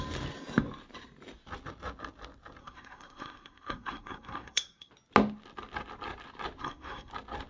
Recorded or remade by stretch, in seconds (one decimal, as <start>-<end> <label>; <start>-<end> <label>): 0.0-2.6 recorded; 2.6-4.9 remade; 4.9-6.6 recorded; 6.6-7.1 remade; 7.1-7.5 recorded